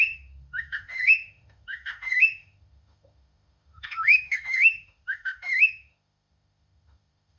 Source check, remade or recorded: remade